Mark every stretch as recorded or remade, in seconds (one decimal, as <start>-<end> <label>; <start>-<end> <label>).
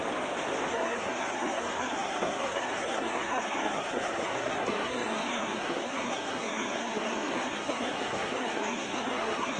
0.0-0.7 recorded; 0.7-9.6 remade